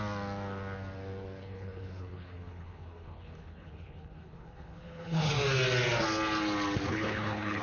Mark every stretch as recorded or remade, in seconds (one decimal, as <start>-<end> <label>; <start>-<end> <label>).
0.0-1.4 recorded; 1.4-5.3 remade; 5.3-6.9 recorded; 6.9-7.6 remade